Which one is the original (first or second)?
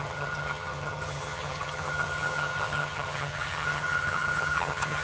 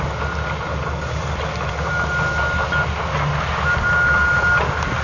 second